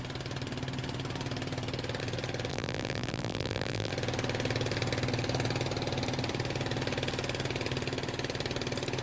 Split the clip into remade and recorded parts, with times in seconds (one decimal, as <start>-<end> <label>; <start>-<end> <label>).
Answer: 0.0-2.5 recorded; 2.5-3.9 remade; 3.9-9.0 recorded